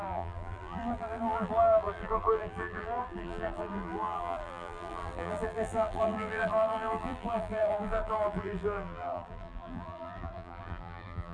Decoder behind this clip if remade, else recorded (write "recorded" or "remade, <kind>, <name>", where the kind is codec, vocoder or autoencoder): remade, vocoder, BigVGAN v2